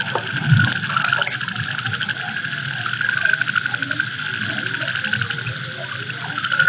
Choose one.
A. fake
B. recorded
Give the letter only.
B